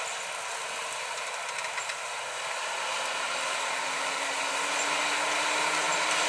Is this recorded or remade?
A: recorded